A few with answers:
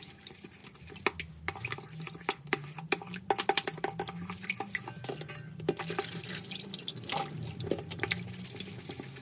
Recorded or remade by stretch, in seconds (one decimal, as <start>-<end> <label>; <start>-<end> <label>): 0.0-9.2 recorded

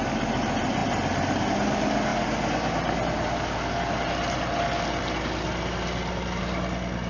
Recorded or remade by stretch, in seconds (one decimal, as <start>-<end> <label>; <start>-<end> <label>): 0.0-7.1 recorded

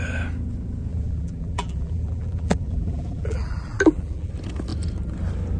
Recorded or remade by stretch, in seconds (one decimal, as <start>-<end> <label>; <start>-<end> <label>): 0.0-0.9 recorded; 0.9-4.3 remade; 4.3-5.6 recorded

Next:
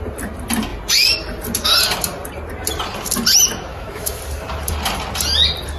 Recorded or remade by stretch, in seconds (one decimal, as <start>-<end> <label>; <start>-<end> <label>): 0.0-3.7 recorded; 3.7-4.2 remade; 4.2-5.8 recorded

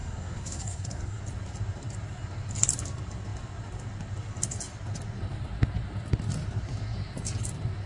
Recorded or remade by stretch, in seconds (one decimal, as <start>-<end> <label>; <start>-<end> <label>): 0.0-1.2 remade; 1.2-7.9 recorded

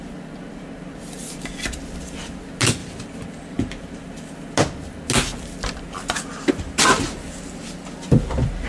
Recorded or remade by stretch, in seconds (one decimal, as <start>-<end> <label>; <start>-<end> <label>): 0.0-8.7 recorded

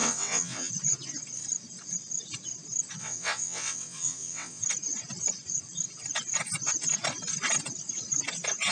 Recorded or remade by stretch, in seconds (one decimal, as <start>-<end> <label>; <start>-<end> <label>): 0.0-0.7 remade; 0.7-3.0 recorded; 3.0-4.6 remade; 4.6-8.7 recorded

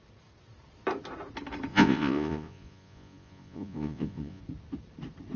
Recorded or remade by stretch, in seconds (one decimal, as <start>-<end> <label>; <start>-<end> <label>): 0.0-1.7 recorded; 1.7-4.4 remade; 4.4-5.4 recorded